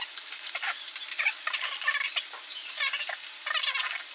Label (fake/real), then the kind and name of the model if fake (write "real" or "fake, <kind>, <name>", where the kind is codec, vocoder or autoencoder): fake, vocoder, BigVGAN v2